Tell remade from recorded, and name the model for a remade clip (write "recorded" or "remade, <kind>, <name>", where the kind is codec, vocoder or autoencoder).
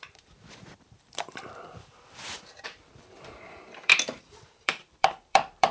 remade, vocoder, BigVGAN v2